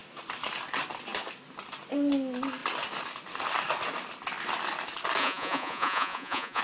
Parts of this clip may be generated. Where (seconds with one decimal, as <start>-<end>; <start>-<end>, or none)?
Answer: 5.2-6.6